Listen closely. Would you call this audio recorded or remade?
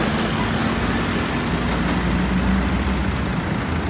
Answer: recorded